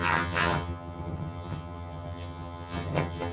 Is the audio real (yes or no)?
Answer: no